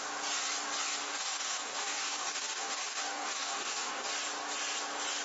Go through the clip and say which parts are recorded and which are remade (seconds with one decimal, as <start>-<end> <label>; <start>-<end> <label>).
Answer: 0.0-1.0 recorded; 1.0-4.1 remade; 4.1-5.2 recorded